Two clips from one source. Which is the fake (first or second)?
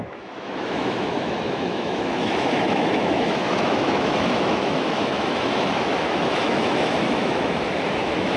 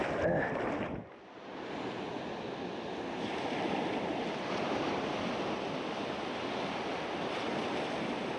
first